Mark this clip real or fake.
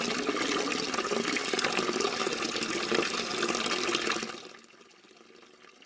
real